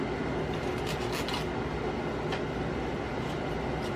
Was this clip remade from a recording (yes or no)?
no